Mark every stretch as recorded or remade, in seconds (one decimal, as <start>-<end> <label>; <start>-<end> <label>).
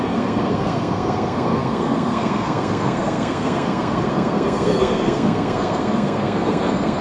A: 0.0-7.0 remade